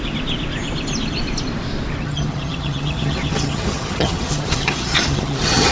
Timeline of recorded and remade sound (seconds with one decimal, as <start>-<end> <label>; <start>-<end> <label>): 0.0-2.0 recorded; 2.0-5.7 remade